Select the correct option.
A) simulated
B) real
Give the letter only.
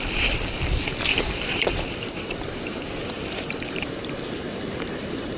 A